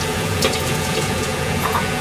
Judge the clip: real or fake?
fake